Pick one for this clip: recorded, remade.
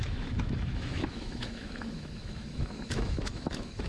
remade